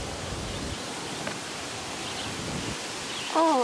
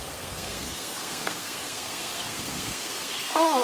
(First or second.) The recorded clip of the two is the first